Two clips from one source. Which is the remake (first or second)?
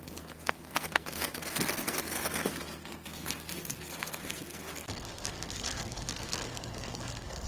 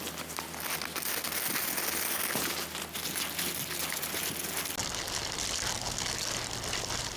first